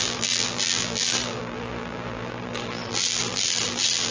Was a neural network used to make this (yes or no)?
yes